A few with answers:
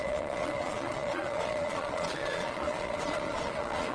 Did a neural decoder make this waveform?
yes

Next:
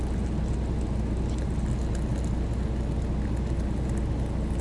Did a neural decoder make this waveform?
no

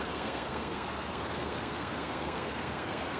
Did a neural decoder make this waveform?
yes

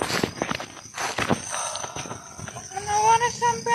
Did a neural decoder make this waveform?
no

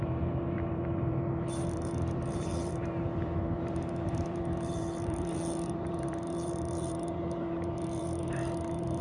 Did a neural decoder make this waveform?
yes